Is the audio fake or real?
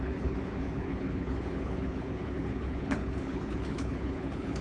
fake